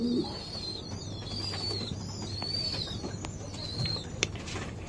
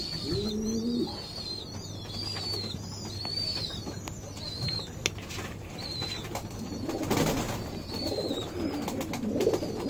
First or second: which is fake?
first